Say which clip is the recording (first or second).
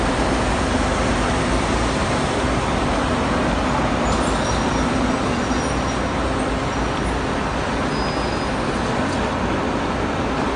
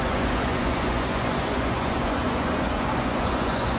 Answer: first